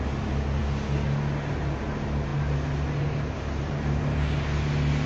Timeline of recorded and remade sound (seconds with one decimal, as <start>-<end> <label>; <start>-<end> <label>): 0.0-5.1 recorded